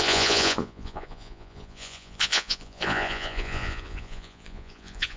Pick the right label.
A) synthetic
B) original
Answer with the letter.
A